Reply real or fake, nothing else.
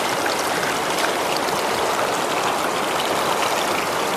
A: real